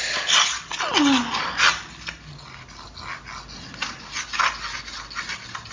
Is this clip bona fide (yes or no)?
yes